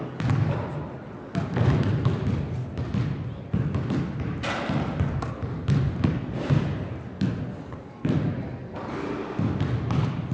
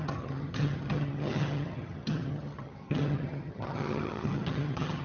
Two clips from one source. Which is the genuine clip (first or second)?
first